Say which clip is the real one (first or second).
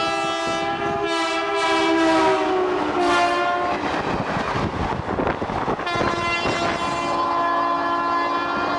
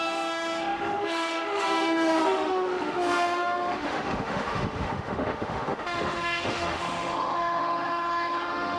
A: first